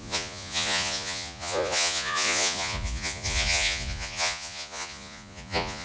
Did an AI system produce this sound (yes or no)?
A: yes